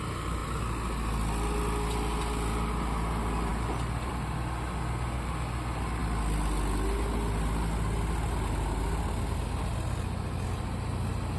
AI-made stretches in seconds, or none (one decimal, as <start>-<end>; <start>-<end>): none